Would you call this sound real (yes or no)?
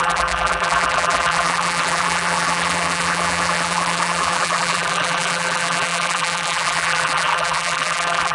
no